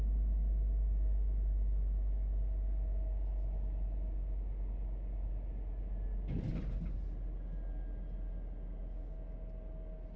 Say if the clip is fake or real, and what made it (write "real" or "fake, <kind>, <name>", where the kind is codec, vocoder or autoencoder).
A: real